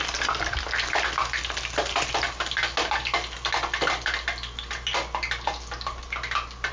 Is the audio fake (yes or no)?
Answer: no